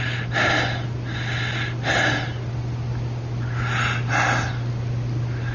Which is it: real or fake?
real